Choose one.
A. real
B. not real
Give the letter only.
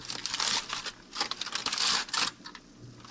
A